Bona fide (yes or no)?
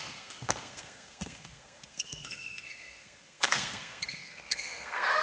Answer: no